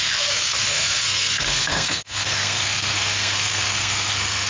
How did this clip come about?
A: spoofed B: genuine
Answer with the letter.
A